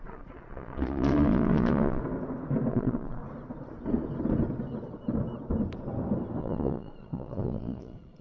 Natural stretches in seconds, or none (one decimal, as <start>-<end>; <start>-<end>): 2.0-2.7; 3.2-6.4